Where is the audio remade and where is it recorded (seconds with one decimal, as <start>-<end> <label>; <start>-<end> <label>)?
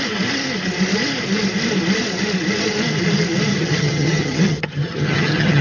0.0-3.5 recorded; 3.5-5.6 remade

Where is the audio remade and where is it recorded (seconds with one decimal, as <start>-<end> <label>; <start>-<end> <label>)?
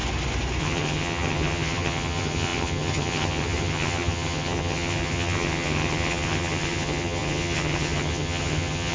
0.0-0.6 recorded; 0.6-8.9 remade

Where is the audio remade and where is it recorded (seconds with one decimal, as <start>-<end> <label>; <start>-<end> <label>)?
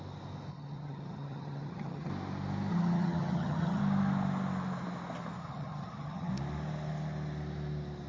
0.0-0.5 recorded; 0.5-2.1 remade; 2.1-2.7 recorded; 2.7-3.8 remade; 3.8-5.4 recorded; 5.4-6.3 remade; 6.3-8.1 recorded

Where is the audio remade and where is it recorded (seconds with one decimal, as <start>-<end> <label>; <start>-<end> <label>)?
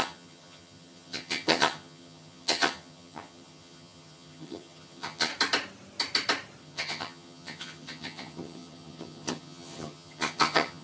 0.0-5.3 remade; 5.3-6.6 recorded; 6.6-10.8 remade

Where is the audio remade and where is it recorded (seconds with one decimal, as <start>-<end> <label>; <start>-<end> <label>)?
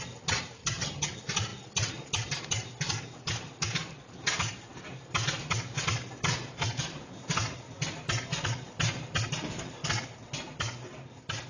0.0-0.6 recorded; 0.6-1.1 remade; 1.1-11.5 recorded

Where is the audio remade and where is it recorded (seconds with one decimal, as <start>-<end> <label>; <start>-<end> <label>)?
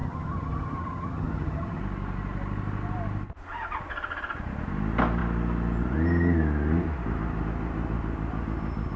0.0-1.8 remade; 1.8-9.0 recorded